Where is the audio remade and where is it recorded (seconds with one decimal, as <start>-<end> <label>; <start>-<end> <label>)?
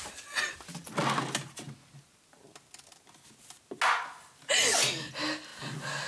0.0-6.1 recorded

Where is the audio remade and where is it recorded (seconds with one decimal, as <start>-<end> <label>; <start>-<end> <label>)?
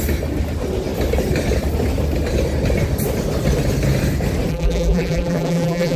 0.0-4.5 recorded; 4.5-6.0 remade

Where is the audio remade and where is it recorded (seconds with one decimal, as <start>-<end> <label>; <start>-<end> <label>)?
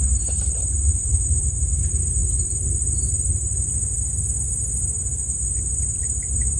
0.0-0.9 recorded; 0.9-1.8 remade; 1.8-2.2 recorded; 2.2-3.7 remade; 3.7-5.1 recorded; 5.1-6.1 remade; 6.1-6.6 recorded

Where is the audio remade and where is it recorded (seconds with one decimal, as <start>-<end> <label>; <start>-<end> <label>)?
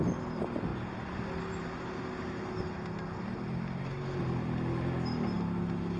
0.0-6.0 recorded